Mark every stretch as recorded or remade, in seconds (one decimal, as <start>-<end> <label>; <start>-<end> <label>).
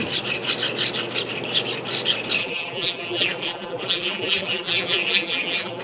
0.0-2.4 recorded; 2.4-5.8 remade